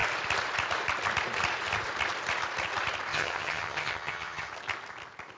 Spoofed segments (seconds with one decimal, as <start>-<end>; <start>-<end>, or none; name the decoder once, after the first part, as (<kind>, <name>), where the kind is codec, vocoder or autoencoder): 3.1-4.5 (vocoder, HiFi-GAN)